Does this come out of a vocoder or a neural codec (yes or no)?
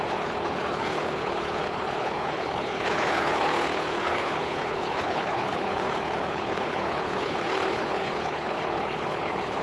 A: yes